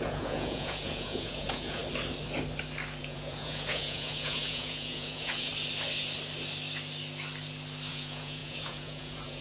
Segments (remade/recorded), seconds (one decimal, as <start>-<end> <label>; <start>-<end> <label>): 0.0-1.8 remade; 1.8-3.0 recorded; 3.0-5.5 remade; 5.5-7.9 recorded; 7.9-9.4 remade